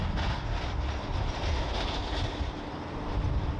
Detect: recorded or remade recorded